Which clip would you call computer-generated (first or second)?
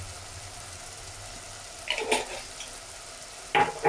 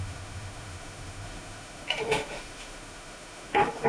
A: second